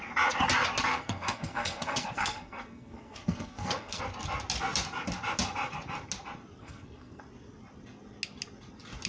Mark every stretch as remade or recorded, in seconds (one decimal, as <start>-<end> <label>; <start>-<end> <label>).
0.0-0.9 recorded; 0.9-4.0 remade; 4.0-6.6 recorded; 6.6-7.2 remade; 7.2-9.1 recorded